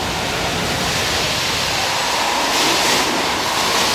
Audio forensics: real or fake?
real